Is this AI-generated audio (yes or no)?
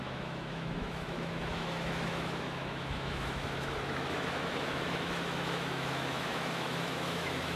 yes